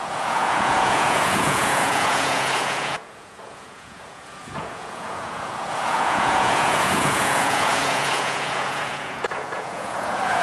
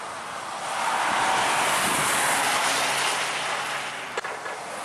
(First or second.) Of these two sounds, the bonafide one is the second